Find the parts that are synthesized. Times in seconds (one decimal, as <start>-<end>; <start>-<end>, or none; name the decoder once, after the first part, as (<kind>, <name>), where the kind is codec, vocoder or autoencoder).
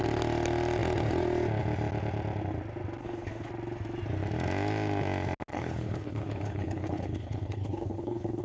3.0-3.5 (codec, HILCodec); 5.5-8.4